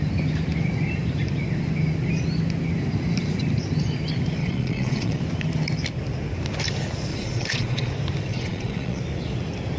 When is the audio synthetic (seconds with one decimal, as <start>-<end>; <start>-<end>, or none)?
4.4-5.2; 7.1-7.9; 8.3-9.0